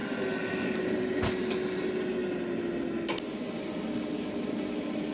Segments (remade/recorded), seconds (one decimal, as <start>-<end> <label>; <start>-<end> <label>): 0.0-5.1 recorded